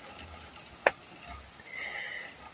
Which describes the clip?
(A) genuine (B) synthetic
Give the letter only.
A